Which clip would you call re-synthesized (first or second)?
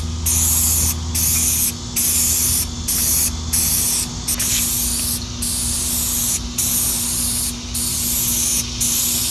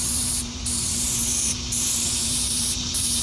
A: second